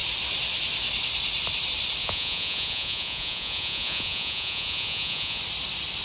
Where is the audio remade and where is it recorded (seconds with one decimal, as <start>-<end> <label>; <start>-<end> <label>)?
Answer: 0.0-2.0 recorded; 2.0-5.4 remade; 5.4-6.0 recorded